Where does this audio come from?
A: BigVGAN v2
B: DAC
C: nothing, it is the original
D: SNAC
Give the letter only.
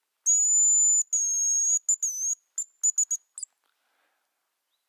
C